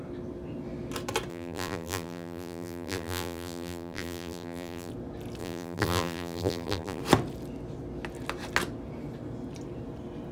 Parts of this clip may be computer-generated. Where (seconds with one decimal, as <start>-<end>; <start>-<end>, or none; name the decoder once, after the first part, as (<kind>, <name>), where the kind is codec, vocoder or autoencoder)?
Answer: 1.3-4.9 (vocoder, BigVGAN v2); 5.4-7.0